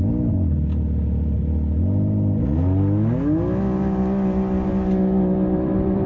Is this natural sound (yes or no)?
yes